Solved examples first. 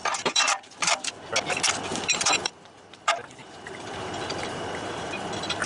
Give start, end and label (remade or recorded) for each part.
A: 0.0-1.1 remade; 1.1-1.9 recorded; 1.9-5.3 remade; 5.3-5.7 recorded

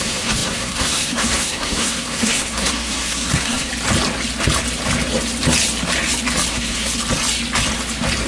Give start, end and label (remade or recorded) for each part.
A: 0.0-3.7 remade; 3.7-6.5 recorded; 6.5-6.9 remade; 6.9-8.3 recorded

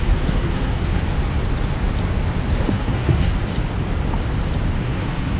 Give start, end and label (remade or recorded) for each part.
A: 0.0-1.0 remade; 1.0-2.7 recorded; 2.7-3.3 remade; 3.3-4.8 recorded; 4.8-5.4 remade